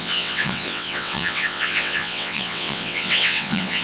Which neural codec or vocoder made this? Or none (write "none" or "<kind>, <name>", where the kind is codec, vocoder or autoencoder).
vocoder, WaveNeXt